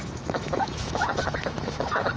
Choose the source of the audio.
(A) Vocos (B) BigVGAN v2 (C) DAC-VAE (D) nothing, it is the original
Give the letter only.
C